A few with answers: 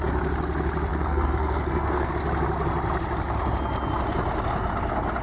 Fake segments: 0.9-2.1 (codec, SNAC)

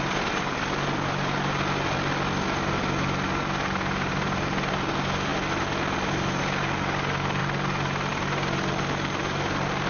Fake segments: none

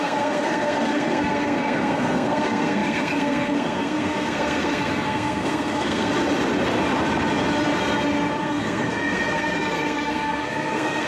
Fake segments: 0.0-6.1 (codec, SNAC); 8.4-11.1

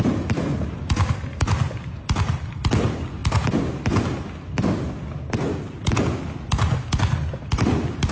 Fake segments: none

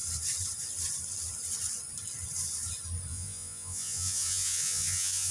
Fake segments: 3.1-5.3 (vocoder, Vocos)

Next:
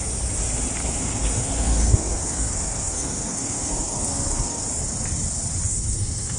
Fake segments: 0.8-4.6 (codec, SNAC); 5.7-6.4

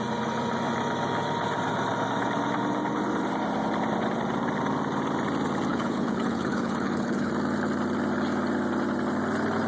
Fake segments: 5.7-7.3 (codec, HILCodec)

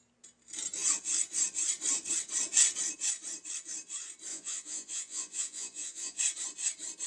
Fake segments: 4.3-6.2 (vocoder, Vocos)